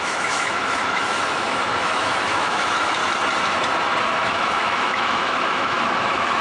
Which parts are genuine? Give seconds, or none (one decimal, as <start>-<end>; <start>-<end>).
3.0-4.0